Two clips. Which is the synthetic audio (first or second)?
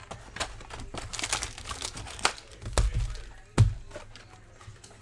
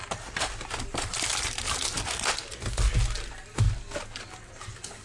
second